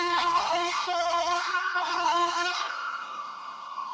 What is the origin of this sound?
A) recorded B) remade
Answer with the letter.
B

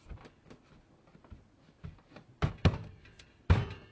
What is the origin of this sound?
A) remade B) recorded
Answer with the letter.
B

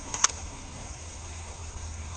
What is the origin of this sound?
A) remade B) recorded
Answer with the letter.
A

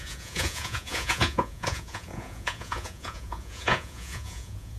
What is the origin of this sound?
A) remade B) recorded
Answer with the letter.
A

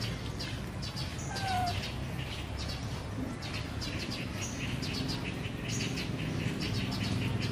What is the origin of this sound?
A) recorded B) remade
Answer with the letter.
A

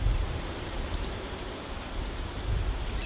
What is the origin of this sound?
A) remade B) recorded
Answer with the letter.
A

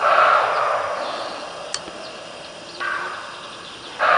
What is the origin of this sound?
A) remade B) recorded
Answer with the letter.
B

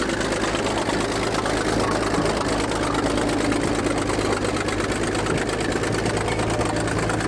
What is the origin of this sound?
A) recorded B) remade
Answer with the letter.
A